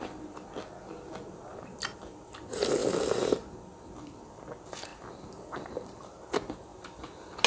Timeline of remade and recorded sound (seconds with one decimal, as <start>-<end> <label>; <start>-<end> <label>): 0.0-7.5 recorded